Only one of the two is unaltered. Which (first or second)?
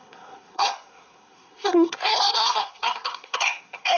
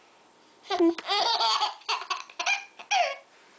second